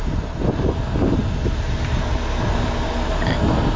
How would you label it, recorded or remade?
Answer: recorded